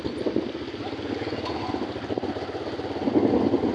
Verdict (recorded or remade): recorded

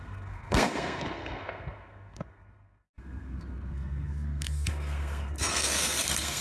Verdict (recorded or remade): remade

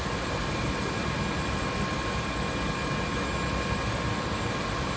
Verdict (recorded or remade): recorded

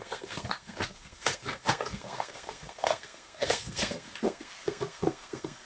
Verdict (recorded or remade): remade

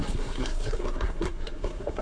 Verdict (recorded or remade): remade